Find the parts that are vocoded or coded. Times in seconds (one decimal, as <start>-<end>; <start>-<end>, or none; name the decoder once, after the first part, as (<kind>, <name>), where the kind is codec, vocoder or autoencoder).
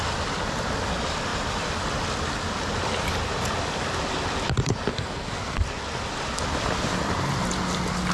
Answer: 4.9-5.6 (codec, SNAC)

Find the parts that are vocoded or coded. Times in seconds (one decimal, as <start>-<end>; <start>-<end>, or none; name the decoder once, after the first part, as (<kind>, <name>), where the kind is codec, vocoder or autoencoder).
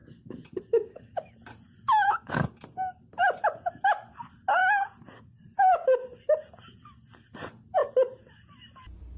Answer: none